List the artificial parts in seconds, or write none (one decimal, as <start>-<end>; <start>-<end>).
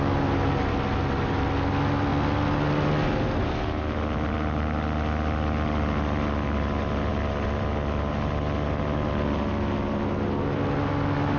none